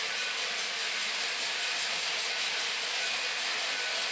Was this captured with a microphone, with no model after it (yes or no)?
yes